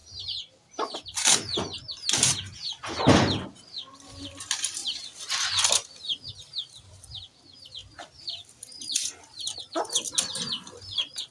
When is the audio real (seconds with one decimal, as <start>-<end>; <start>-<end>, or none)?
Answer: 0.0-2.7; 4.8-5.7